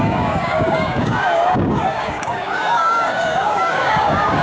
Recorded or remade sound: remade